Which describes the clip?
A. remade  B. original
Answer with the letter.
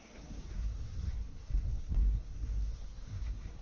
A